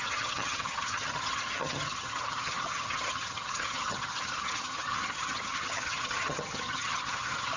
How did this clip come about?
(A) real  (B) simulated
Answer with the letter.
B